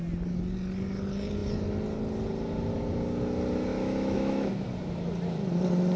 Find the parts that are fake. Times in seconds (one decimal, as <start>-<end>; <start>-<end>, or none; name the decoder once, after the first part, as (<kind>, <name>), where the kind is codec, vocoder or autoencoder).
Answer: 3.7-4.5 (autoencoder, DAC-VAE)